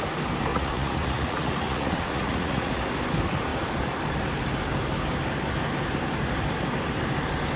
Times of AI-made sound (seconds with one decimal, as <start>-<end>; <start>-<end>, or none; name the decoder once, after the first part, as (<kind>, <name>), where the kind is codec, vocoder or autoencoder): 0.5-2.7 (vocoder, Vocos)